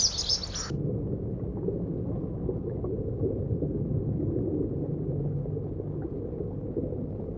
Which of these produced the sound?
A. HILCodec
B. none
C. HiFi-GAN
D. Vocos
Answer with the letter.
B